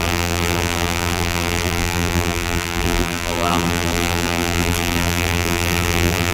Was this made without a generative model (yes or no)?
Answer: no